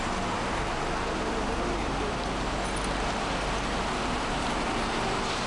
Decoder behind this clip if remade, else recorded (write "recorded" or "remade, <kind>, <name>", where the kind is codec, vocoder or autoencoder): recorded